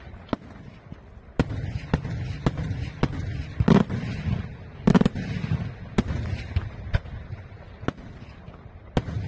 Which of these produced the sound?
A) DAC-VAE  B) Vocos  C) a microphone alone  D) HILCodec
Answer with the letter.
C